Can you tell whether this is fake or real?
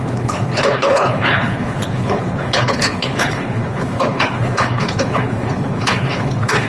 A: fake